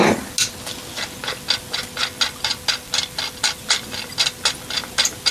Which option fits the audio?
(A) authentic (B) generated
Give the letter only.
A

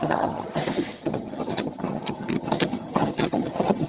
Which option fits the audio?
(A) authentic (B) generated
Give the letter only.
B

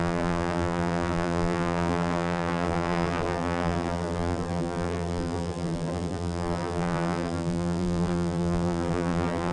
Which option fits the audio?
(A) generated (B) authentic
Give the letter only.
A